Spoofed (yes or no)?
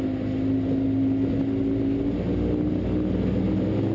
no